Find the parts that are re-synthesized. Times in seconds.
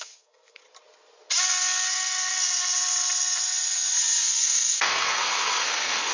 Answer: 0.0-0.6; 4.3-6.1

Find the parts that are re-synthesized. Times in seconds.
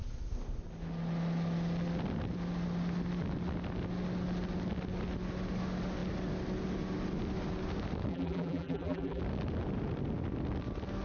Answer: 8.1-9.2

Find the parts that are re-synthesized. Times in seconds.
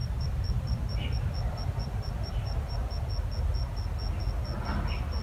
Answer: 0.0-3.1